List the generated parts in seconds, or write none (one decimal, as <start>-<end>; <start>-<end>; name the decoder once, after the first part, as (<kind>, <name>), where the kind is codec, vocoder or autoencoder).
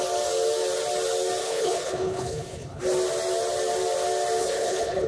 1.4-2.8 (codec, HILCodec); 4.4-5.1